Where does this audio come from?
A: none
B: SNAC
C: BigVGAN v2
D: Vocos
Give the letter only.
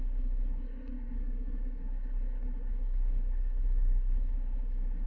B